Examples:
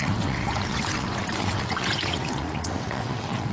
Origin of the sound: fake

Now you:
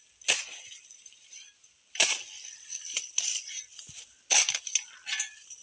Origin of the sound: real